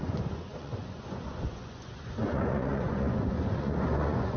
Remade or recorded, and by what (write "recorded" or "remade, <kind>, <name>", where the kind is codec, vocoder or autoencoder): remade, vocoder, Vocos